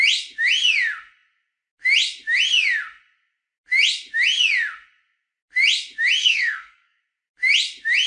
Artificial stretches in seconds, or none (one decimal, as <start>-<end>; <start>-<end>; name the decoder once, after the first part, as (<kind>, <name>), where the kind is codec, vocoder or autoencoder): 6.2-7.0 (codec, SNAC)